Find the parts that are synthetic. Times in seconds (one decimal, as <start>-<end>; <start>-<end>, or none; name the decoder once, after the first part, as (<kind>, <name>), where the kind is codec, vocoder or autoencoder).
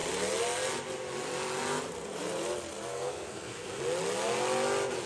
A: 2.9-3.8 (codec, SNAC)